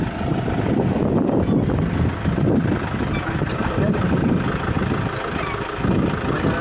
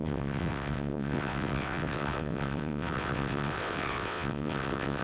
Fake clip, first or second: second